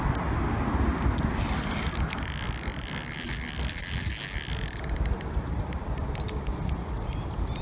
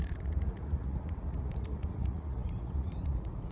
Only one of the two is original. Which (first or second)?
first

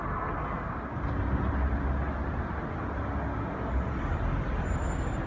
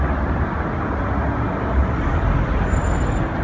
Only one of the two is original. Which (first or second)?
first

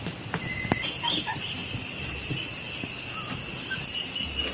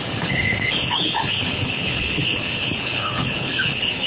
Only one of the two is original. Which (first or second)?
first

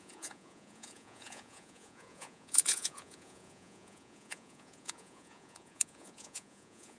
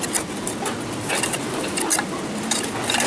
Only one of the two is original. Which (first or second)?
second